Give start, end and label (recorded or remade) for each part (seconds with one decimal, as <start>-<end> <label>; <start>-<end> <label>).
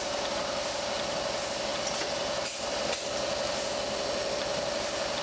0.0-5.2 recorded